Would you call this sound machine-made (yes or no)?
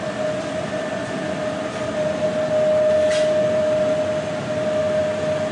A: no